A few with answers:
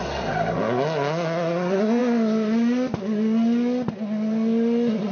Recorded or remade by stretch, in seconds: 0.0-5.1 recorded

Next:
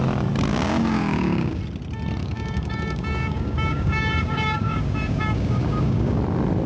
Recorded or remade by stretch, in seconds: 0.0-0.5 recorded; 0.5-1.6 remade; 1.6-2.2 recorded; 2.2-6.2 remade; 6.2-6.7 recorded